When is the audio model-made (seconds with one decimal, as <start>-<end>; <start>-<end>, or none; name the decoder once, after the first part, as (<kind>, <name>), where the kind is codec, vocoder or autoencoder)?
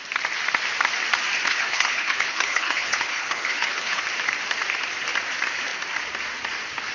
1.5-4.0 (codec, HILCodec)